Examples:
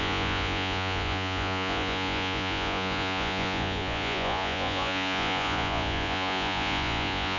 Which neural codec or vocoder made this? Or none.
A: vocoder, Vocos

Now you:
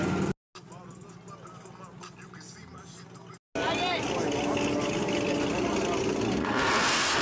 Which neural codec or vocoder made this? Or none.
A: none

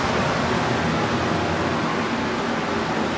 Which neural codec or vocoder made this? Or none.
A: none